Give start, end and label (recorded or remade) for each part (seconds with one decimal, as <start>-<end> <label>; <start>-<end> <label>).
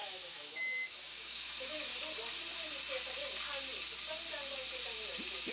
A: 0.0-1.9 remade; 1.9-5.5 recorded